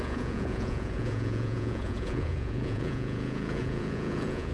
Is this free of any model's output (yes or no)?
no